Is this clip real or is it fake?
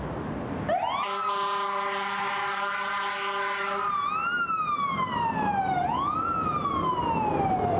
real